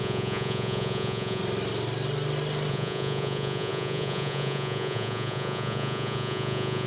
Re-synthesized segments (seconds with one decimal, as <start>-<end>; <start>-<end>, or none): 0.0-1.4; 2.7-6.9